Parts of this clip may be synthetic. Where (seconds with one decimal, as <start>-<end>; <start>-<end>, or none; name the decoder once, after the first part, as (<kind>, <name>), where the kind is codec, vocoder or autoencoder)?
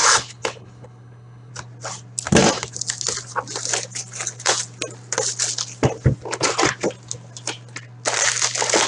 0.0-1.5 (codec, HILCodec)